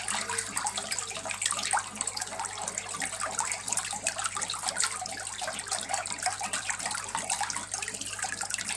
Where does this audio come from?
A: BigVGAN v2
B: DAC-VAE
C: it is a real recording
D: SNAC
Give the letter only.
C